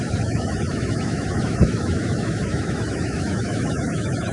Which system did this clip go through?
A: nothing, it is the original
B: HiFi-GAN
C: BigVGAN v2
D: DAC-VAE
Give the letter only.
D